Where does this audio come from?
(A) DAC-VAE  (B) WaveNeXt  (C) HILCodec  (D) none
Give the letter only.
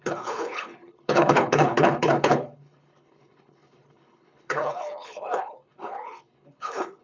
C